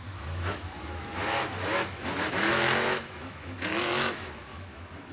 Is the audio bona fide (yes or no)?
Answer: no